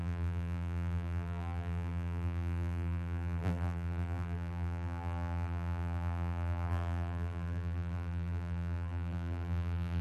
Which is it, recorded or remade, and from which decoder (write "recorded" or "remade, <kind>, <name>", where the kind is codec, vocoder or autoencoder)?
remade, vocoder, BigVGAN v2